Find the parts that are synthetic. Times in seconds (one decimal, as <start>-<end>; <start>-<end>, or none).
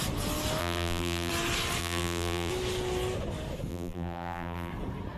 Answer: 0.6-1.3; 1.8-2.5; 3.7-4.7